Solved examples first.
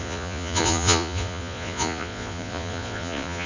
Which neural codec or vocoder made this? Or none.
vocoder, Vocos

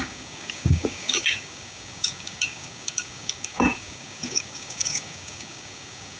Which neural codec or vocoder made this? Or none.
codec, DAC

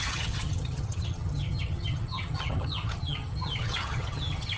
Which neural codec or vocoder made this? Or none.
vocoder, HiFi-GAN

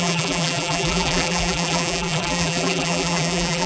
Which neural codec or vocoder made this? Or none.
vocoder, BigVGAN v2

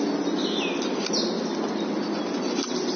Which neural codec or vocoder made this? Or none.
none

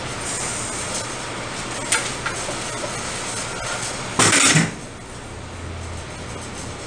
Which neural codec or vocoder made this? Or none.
none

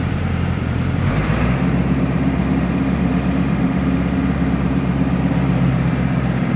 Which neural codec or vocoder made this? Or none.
vocoder, BigVGAN v2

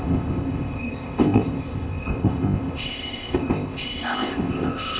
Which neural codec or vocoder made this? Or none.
codec, ZipCodec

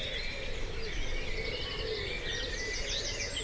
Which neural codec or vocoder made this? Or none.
none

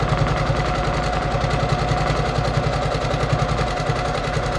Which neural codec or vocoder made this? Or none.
none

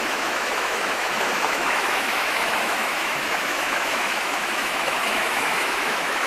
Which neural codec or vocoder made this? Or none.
autoencoder, DAC-VAE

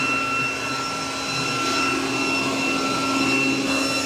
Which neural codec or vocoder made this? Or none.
none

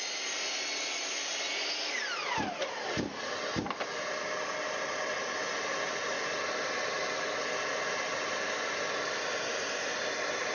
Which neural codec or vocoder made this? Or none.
none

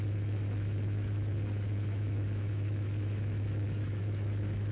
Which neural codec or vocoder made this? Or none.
autoencoder, DAC-VAE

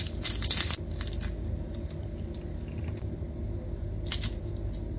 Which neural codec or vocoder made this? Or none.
none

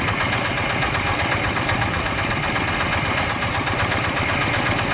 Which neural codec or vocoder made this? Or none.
none